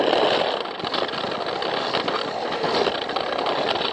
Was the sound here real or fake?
real